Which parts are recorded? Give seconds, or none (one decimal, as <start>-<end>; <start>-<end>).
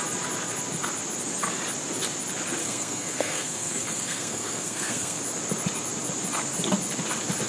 0.0-2.6; 5.2-7.5